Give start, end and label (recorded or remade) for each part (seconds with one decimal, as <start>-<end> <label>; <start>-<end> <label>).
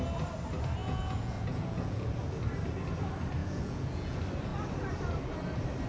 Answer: 0.0-0.8 recorded; 0.8-2.1 remade; 2.1-3.4 recorded; 3.4-4.2 remade; 4.2-5.9 recorded